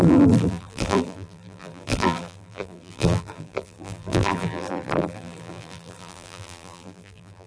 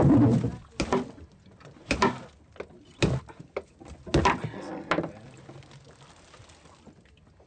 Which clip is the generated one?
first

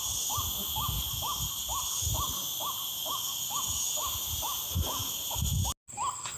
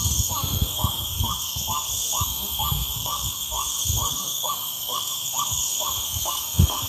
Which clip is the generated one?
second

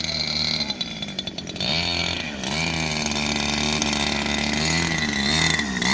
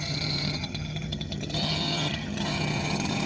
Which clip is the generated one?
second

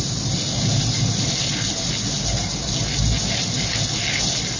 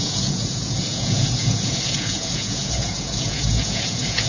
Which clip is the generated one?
second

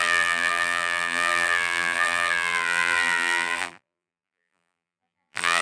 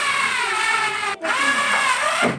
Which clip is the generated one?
first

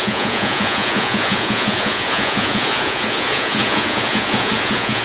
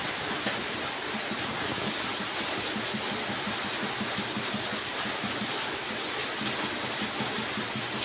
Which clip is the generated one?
first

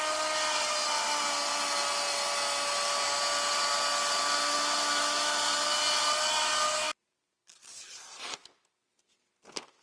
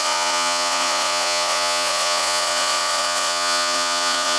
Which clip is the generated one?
second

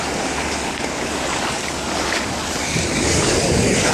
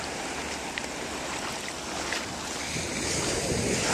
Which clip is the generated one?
first